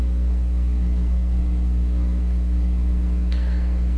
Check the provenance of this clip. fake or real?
fake